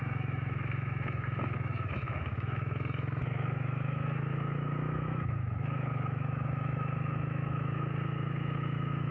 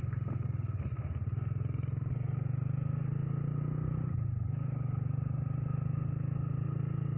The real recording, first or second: second